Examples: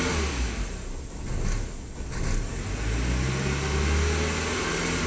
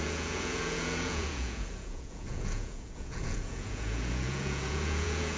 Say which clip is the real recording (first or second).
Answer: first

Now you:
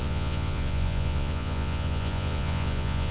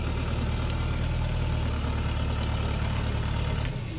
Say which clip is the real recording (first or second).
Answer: second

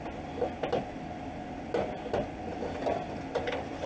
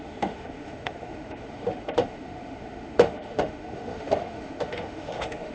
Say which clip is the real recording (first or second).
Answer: first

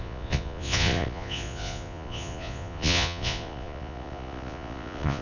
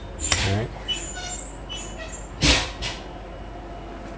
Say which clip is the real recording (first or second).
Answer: second